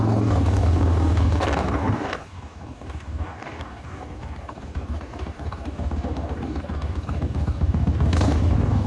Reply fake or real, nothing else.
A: fake